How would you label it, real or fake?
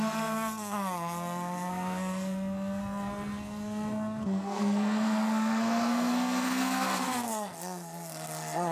fake